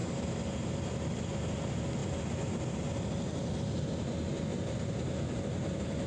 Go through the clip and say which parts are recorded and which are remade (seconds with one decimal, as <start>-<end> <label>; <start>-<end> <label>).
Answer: 0.0-6.1 recorded